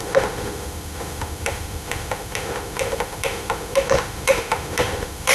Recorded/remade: remade